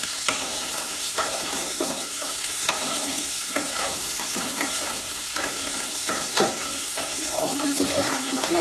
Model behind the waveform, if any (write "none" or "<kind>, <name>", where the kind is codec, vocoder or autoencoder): codec, SNAC